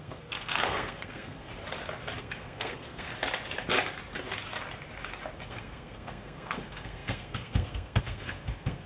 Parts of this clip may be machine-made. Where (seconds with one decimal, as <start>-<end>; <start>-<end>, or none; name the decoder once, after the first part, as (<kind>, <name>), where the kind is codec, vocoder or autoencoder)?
0.0-1.5 (codec, SNAC); 2.2-3.1; 5.5-8.9